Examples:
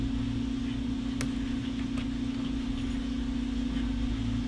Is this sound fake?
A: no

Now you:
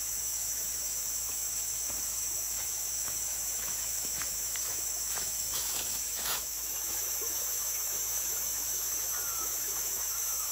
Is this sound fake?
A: yes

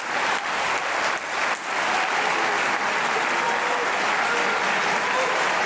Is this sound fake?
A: no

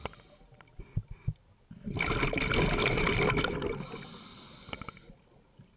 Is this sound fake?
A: no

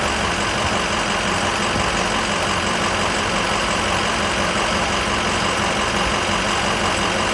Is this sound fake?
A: no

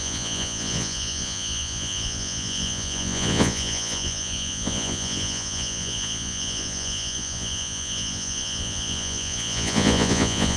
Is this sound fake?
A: yes